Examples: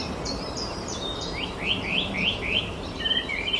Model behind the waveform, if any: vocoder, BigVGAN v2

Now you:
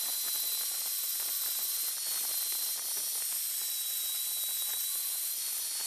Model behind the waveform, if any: none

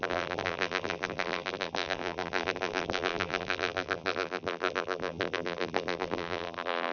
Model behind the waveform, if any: vocoder, BigVGAN v2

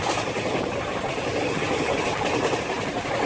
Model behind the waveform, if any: none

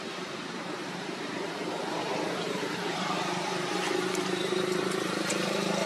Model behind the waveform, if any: vocoder, BigVGAN v2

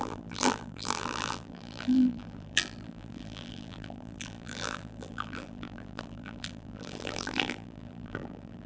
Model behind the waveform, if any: vocoder, BigVGAN v2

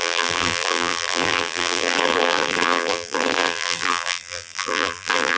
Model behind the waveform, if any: vocoder, BigVGAN v2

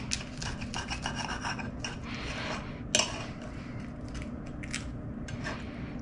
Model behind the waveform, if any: none